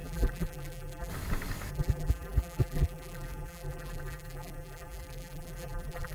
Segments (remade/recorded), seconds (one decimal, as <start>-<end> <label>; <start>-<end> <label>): 0.0-1.1 remade; 1.1-1.7 recorded; 1.7-6.1 remade